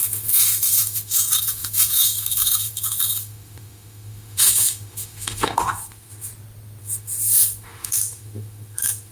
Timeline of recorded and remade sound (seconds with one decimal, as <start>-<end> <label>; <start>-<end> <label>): 0.0-6.3 remade; 6.3-6.8 recorded; 6.8-9.1 remade